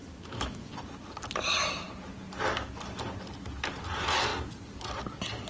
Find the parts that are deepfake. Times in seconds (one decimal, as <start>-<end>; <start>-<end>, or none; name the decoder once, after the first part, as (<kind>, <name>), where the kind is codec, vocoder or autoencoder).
0.0-0.7 (autoencoder, DAC-VAE)